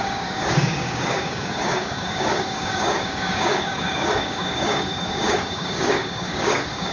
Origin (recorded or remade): remade